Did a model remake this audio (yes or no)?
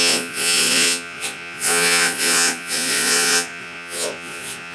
yes